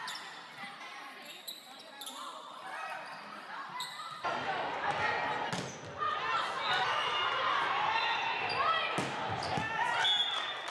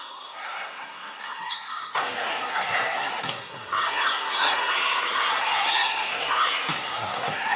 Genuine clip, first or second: first